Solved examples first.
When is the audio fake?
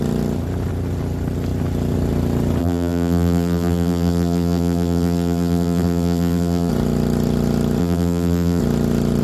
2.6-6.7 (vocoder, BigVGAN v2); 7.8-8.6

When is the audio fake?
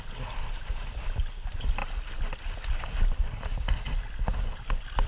none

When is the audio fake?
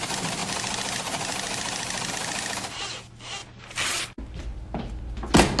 0.4-2.1 (vocoder, BigVGAN v2)